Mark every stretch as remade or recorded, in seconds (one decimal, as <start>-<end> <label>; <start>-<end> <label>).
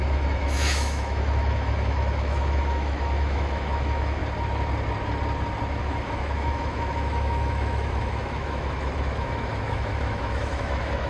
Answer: 0.0-4.2 remade; 4.2-5.8 recorded; 5.8-11.1 remade